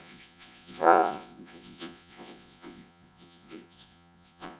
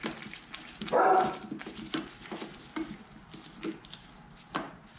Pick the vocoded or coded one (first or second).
first